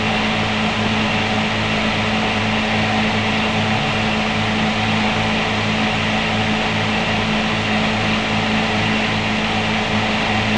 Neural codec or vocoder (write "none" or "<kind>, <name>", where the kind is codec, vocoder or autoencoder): none